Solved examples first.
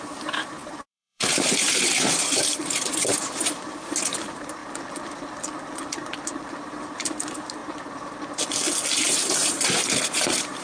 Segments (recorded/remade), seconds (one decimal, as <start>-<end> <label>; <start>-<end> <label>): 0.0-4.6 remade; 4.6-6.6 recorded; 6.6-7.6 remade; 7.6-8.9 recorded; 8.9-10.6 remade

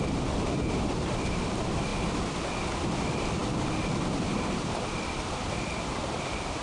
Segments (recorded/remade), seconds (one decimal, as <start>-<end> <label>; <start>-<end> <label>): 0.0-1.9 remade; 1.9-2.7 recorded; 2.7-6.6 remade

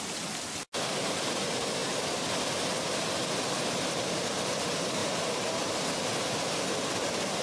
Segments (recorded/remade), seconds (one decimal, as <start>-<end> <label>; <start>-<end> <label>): 0.0-7.4 recorded

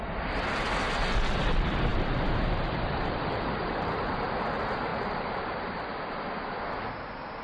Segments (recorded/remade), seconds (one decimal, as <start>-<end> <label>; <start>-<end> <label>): 0.0-1.9 recorded; 1.9-4.1 remade; 4.1-4.9 recorded; 4.9-6.0 remade; 6.0-7.4 recorded

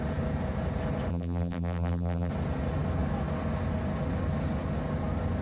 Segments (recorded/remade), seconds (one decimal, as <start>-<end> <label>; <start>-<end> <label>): 0.0-1.1 recorded; 1.1-2.3 remade; 2.3-5.4 recorded